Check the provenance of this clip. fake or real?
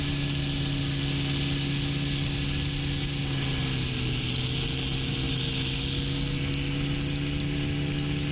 real